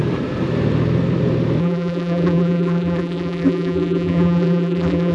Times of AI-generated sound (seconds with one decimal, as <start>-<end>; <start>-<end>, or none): 1.6-5.1